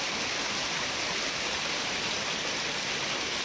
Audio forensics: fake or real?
real